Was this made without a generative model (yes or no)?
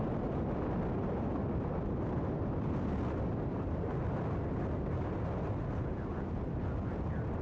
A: yes